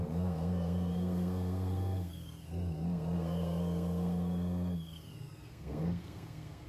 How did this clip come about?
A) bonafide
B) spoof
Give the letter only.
B